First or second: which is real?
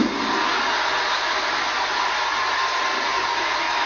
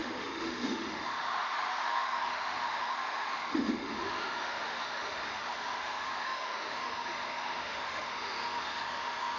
first